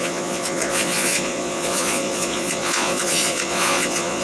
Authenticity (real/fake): fake